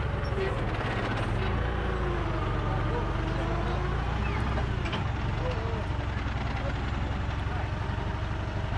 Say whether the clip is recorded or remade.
recorded